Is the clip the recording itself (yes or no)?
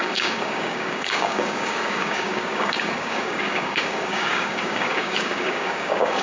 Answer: no